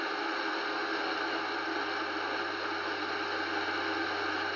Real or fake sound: real